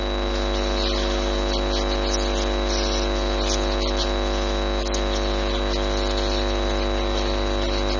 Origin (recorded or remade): recorded